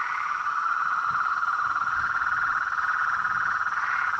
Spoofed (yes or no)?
yes